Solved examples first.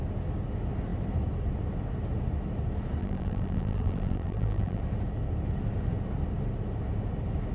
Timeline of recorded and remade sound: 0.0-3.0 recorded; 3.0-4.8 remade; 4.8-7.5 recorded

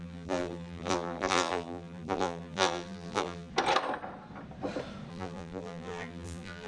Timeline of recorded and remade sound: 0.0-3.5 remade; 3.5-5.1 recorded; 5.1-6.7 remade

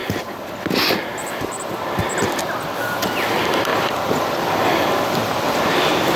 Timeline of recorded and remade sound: 0.0-6.2 recorded

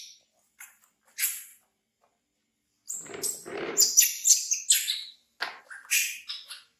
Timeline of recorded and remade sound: 0.0-1.5 remade; 1.5-5.6 recorded; 5.6-6.8 remade